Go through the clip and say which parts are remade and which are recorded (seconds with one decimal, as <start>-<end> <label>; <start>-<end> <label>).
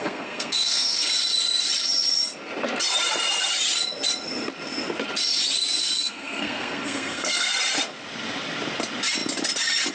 0.0-1.1 remade; 1.1-5.8 recorded; 5.8-7.5 remade; 7.5-9.9 recorded